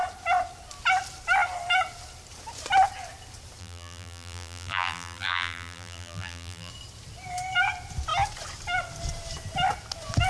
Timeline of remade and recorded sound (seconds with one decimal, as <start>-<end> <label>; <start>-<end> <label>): 0.0-3.6 recorded; 3.6-6.7 remade; 6.7-10.3 recorded